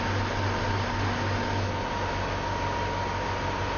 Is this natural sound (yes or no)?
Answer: yes